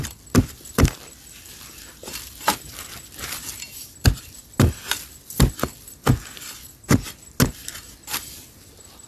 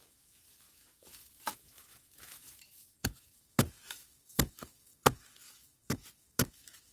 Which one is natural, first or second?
first